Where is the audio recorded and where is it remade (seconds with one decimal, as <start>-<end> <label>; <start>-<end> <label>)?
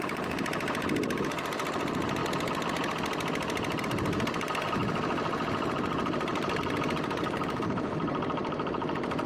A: 0.0-2.2 remade; 2.2-3.8 recorded; 3.8-4.8 remade; 4.8-5.7 recorded; 5.7-9.3 remade